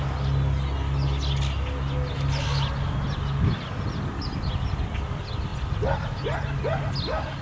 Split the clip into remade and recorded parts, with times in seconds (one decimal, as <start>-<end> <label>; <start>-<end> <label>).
0.0-7.4 recorded